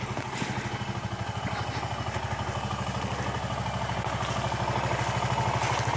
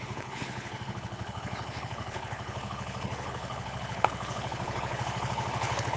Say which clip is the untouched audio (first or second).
first